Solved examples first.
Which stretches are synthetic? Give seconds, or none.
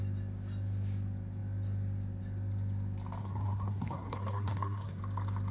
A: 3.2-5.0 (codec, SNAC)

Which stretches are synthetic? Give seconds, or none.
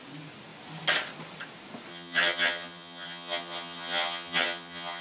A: 1.9-5.0 (vocoder, HiFi-GAN)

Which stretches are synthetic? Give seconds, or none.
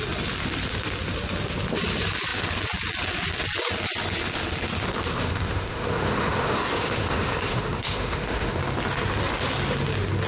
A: 5.1-8.6 (autoencoder, DAC-VAE)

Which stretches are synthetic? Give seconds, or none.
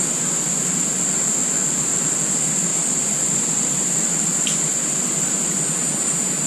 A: 2.7-5.6 (vocoder, BigVGAN v2)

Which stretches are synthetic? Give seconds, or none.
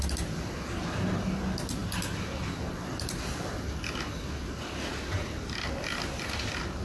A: none